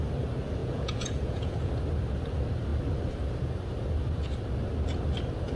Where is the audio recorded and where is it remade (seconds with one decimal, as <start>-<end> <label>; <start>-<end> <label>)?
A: 0.0-0.6 recorded; 0.6-1.7 remade; 1.7-5.6 recorded